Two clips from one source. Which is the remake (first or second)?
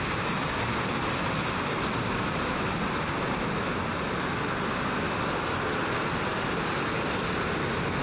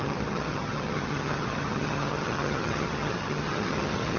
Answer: second